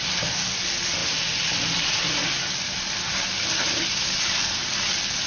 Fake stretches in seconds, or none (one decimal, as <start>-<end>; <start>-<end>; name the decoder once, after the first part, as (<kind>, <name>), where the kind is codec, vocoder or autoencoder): none